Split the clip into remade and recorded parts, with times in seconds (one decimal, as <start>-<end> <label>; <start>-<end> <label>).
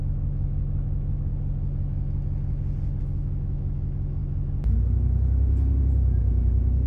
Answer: 0.0-1.3 remade; 1.3-3.0 recorded; 3.0-4.2 remade; 4.2-6.9 recorded